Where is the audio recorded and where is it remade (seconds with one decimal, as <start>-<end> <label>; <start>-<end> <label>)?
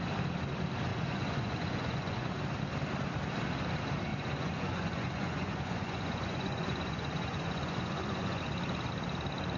0.0-0.9 recorded; 0.9-2.3 remade; 2.3-4.1 recorded; 4.1-8.4 remade; 8.4-9.6 recorded